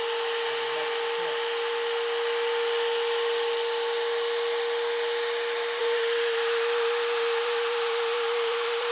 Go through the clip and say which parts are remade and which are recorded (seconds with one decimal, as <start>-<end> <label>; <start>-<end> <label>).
0.0-5.8 recorded; 5.8-8.9 remade